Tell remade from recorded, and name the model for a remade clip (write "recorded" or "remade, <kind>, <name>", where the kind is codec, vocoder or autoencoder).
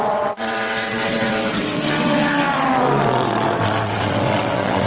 remade, vocoder, WaveNeXt